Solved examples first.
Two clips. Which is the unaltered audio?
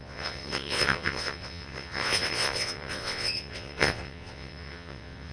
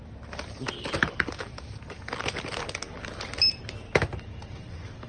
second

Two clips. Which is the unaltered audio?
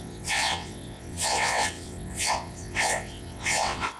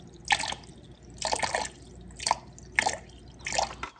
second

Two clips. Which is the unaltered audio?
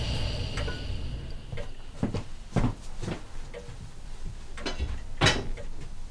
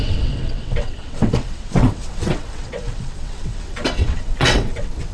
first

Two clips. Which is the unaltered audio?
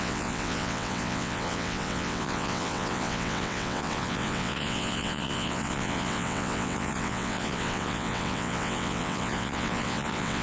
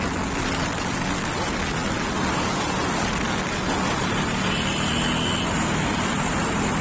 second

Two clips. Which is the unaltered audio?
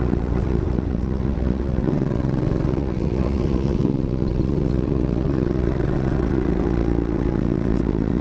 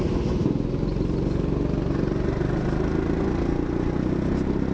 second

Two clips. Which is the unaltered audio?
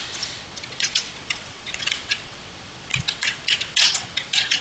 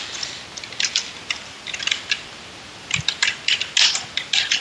second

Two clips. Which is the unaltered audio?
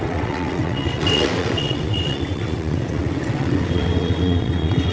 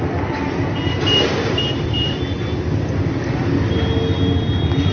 second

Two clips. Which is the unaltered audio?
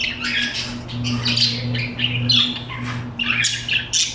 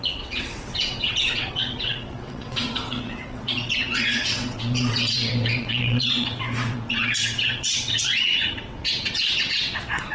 first